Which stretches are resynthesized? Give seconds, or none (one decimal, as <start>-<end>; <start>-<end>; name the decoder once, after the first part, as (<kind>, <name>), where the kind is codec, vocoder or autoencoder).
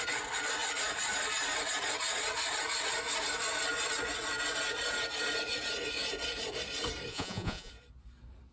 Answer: 7.1-7.7 (vocoder, Vocos)